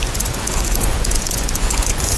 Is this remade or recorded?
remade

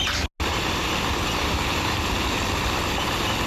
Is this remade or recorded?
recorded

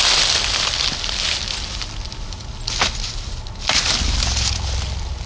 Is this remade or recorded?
recorded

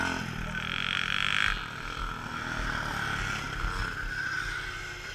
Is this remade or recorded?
recorded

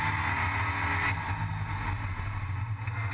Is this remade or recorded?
recorded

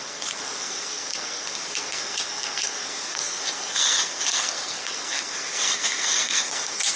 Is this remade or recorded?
remade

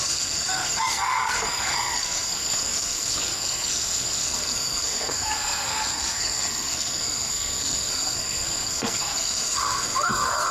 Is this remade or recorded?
remade